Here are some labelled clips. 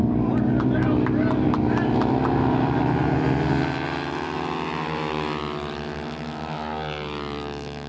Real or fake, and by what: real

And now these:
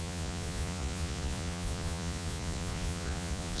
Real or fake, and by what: fake, vocoder, Vocos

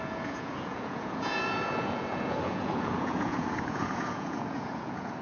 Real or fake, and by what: fake, vocoder, Vocos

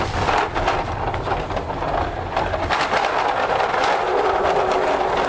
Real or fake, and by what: real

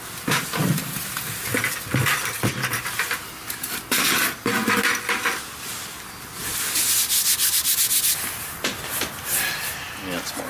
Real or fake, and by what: real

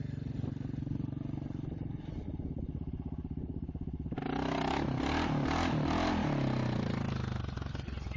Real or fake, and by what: real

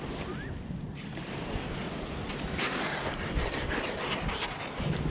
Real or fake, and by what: real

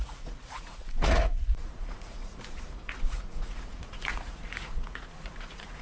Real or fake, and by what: fake, vocoder, Vocos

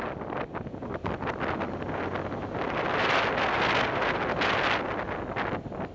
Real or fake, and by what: real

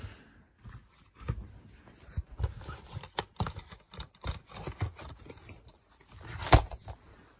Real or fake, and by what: real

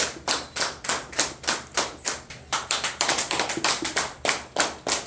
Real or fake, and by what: real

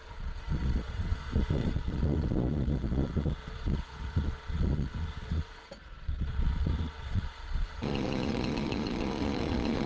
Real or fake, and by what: fake, vocoder, Vocos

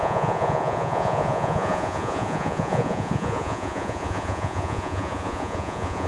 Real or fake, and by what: fake, vocoder, Vocos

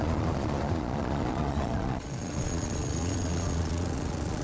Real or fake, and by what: fake, vocoder, Vocos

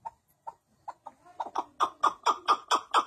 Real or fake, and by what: real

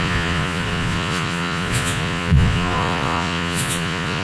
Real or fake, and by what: fake, vocoder, Vocos